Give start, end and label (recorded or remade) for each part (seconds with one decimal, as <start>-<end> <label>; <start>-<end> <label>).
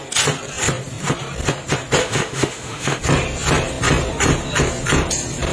0.0-2.0 recorded; 2.0-3.0 remade; 3.0-5.5 recorded